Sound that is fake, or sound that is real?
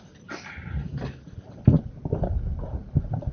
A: real